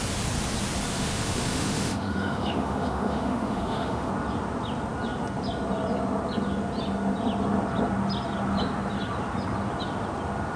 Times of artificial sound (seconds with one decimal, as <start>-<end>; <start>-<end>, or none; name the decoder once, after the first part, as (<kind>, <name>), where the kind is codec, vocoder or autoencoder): 0.9-4.1 (autoencoder, DAC-VAE)

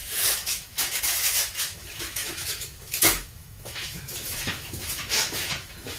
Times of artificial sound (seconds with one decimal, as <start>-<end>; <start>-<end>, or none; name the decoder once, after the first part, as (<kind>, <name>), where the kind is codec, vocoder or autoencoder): 0.0-6.0 (autoencoder, DAC-VAE)